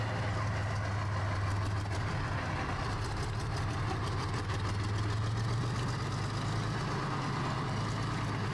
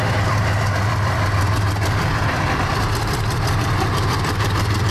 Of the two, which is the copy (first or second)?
second